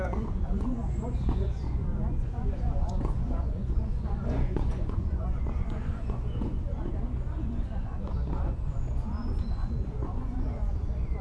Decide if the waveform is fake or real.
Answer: fake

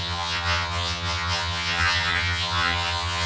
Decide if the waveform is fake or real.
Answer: fake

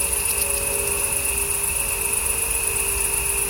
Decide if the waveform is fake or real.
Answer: real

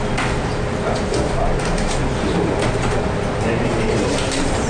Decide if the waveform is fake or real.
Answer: fake